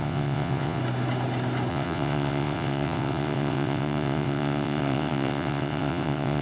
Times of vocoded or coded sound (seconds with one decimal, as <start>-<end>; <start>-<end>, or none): 0.0-0.8; 1.7-6.4